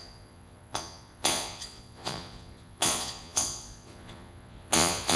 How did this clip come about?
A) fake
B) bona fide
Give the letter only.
A